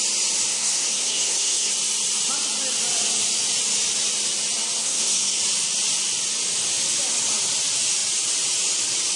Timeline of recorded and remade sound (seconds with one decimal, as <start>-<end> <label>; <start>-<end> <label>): 0.0-0.5 recorded; 0.5-1.7 remade; 1.7-4.8 recorded; 4.8-5.4 remade; 5.4-9.2 recorded